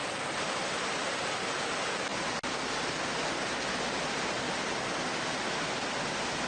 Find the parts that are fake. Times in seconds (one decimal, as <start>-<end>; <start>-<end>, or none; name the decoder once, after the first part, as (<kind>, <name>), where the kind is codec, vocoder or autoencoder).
none